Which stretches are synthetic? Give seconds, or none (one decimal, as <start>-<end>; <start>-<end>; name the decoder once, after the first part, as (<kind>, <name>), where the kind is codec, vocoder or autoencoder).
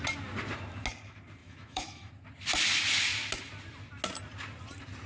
1.4-2.1 (autoencoder, DAC-VAE)